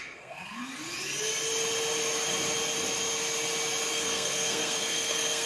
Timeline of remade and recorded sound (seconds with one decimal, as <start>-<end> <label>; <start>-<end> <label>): 0.0-0.6 remade; 0.6-3.9 recorded; 3.9-5.5 remade